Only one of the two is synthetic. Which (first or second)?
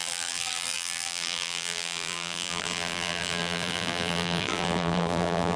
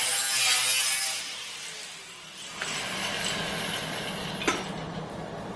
first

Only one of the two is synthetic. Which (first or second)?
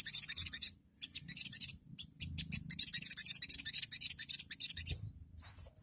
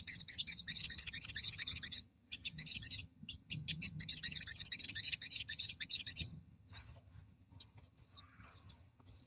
second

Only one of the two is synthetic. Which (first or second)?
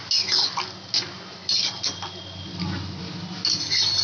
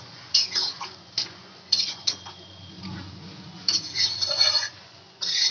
second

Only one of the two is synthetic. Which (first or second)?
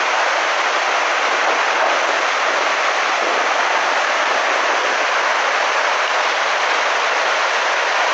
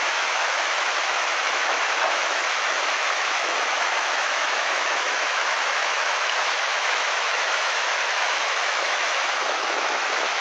second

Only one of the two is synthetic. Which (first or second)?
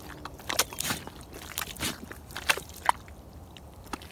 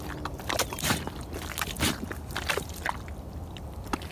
first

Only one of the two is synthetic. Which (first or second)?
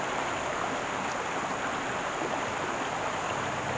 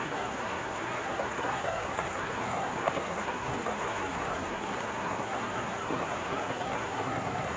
second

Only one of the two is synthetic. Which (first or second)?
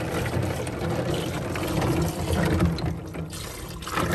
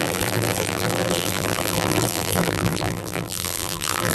second